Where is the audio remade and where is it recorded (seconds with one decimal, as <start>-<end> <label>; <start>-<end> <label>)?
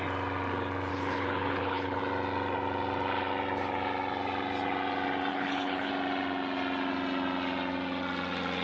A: 0.0-0.9 recorded; 0.9-2.0 remade; 2.0-5.3 recorded; 5.3-5.9 remade; 5.9-8.6 recorded